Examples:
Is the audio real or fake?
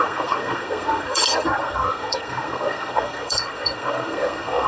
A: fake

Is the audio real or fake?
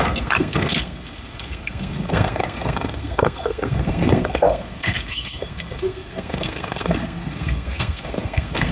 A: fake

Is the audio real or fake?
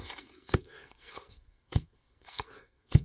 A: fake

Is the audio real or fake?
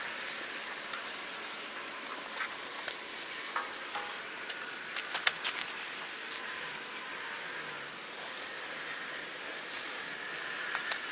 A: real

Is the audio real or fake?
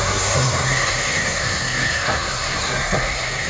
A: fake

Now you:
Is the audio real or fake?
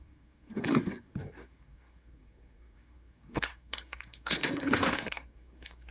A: fake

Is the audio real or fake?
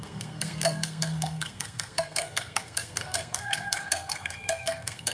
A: fake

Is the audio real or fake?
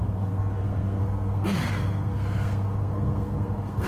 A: fake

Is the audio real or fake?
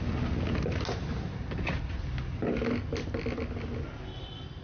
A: real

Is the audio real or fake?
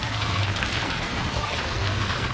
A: fake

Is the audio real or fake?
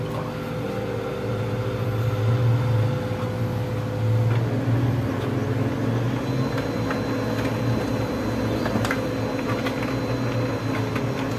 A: real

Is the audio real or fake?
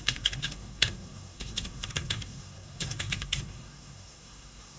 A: fake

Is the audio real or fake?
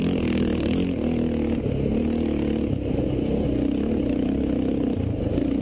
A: real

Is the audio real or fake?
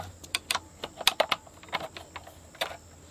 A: real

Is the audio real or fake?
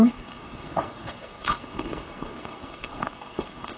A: fake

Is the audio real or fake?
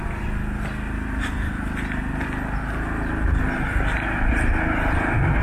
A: real